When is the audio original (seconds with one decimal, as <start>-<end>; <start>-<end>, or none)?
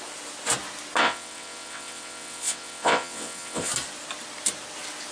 0.0-1.0; 3.7-5.1